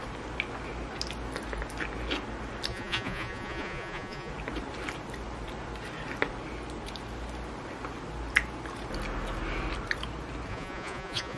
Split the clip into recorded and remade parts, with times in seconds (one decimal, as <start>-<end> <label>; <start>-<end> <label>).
0.0-2.7 recorded; 2.7-4.3 remade; 4.3-10.5 recorded; 10.5-11.4 remade